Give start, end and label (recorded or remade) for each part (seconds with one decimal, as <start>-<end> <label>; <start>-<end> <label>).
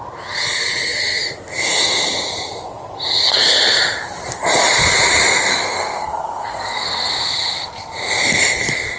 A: 0.0-5.5 recorded; 5.5-7.1 remade; 7.1-9.0 recorded